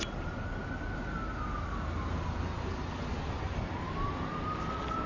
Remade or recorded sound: recorded